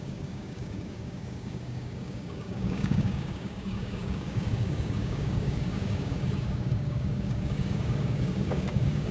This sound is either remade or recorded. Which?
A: remade